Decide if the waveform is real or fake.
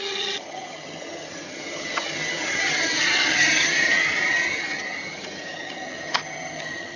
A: fake